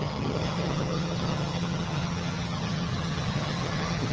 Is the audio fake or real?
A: fake